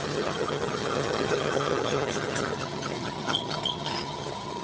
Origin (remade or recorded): remade